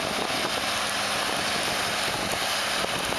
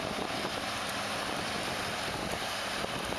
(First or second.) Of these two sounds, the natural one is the first